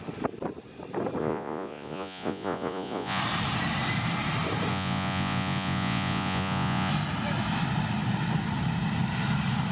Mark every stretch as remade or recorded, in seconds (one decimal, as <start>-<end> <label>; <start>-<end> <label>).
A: 0.0-1.2 recorded; 1.2-3.2 remade; 3.2-4.7 recorded; 4.7-6.9 remade; 6.9-9.7 recorded